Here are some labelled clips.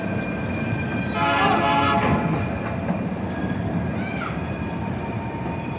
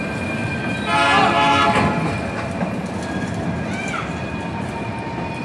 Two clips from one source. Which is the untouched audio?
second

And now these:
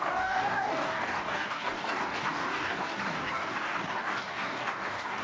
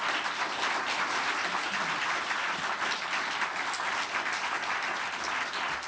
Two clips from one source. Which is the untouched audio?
second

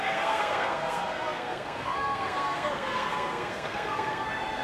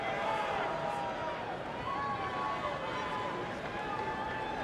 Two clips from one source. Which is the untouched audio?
second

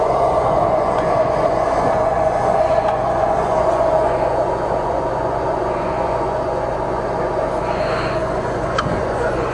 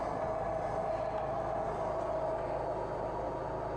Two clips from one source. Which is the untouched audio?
second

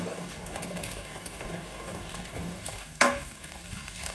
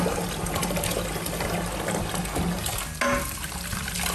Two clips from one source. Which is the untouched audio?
second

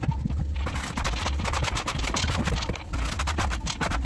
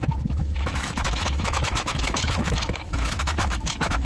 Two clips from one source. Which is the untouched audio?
first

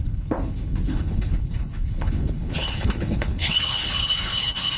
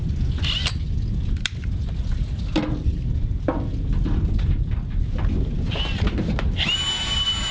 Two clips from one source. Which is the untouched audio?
second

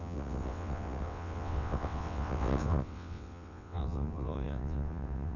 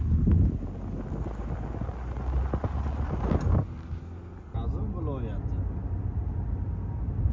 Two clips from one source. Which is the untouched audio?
second